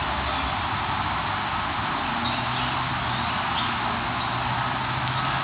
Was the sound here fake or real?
real